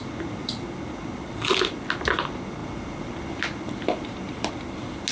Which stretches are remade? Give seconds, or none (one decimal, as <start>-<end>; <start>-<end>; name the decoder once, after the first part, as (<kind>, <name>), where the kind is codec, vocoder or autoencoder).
none

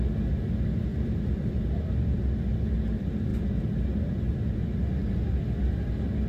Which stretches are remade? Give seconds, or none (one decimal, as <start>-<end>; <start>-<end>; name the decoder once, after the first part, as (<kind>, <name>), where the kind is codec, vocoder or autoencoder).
0.9-2.5 (vocoder, BigVGAN v2)

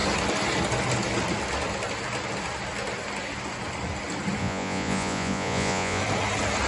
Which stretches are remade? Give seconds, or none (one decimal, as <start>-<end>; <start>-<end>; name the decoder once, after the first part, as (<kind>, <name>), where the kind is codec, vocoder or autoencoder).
4.4-6.0 (vocoder, Vocos)

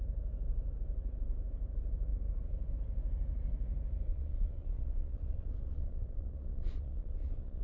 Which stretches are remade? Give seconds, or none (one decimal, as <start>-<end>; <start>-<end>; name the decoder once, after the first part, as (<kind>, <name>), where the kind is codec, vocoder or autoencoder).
4.1-7.6 (vocoder, Vocos)

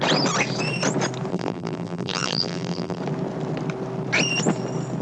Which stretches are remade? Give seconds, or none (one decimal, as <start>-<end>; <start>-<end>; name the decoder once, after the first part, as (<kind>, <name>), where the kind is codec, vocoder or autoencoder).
1.3-3.0 (vocoder, BigVGAN v2)

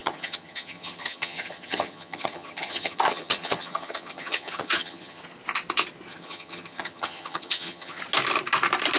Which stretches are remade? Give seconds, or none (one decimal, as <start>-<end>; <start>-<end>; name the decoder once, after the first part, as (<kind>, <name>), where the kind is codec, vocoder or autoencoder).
0.0-5.2 (vocoder, HiFi-GAN); 6.1-8.0

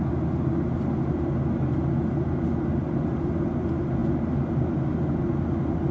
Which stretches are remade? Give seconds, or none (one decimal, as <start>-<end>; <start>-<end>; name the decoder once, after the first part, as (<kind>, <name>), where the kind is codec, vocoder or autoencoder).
none